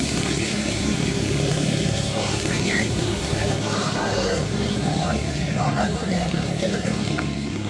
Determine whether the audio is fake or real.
fake